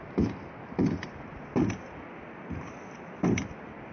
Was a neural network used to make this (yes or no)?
no